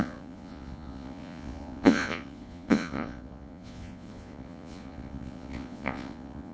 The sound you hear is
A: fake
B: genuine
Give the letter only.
A